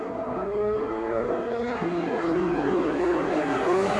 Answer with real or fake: fake